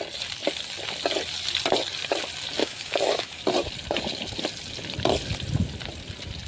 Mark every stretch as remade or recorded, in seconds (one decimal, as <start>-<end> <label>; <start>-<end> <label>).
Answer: 0.0-2.6 recorded; 2.6-3.4 remade; 3.4-6.5 recorded